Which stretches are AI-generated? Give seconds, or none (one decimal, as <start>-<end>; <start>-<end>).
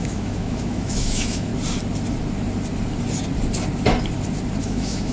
0.0-1.5; 4.6-5.1